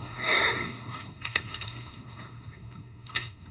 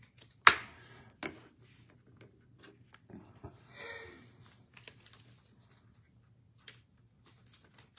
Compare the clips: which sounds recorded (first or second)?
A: second